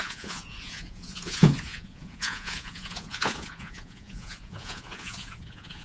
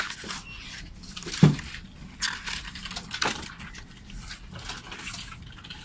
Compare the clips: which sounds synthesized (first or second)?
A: first